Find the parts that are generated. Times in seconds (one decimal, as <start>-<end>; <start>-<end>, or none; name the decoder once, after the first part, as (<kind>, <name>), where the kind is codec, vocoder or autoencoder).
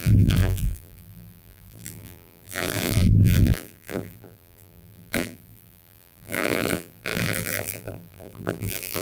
0.0-9.0 (vocoder, BigVGAN v2)